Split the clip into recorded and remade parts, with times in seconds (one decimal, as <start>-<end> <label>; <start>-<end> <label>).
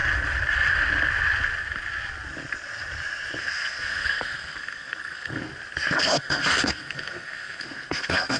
0.0-3.4 recorded; 3.4-5.5 remade; 5.5-6.0 recorded; 6.0-8.4 remade